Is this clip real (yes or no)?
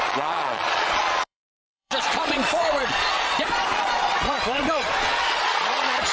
no